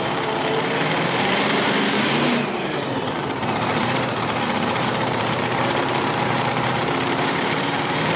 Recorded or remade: remade